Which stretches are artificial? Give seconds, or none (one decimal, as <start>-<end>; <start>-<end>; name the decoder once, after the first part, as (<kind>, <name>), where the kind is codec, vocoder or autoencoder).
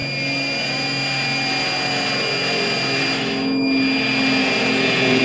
4.4-5.2 (vocoder, Vocos)